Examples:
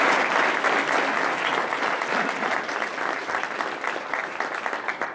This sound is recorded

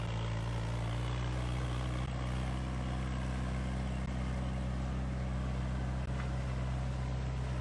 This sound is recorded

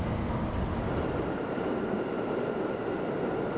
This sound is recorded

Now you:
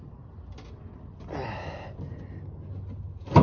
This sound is recorded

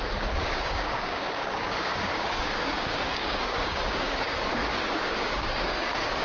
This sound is remade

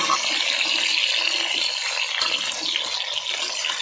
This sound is recorded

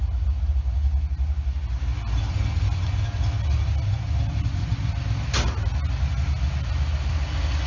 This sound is recorded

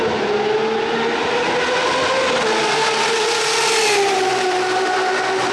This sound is recorded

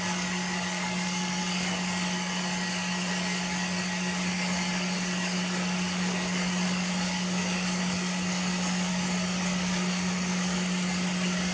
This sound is remade